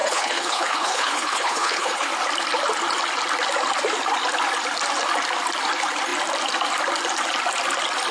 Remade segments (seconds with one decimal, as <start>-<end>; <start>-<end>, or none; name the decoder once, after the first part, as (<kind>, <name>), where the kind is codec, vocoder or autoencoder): 0.0-2.1 (codec, HILCodec)